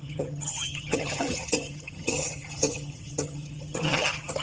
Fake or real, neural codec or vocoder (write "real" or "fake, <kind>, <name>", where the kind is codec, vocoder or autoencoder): fake, vocoder, HiFi-GAN